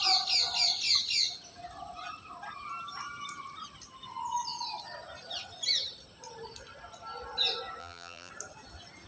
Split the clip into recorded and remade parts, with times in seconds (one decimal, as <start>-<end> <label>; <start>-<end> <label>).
0.0-7.8 recorded; 7.8-8.3 remade; 8.3-9.1 recorded